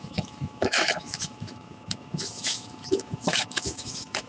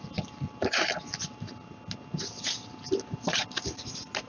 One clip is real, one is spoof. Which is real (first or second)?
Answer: second